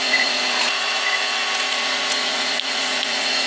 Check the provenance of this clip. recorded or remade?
remade